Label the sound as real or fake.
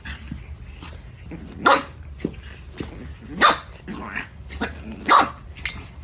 real